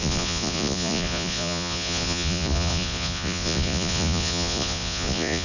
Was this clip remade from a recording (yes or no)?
yes